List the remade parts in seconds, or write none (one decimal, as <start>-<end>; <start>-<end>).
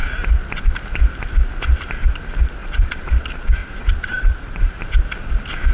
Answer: 2.6-3.1; 3.6-4.7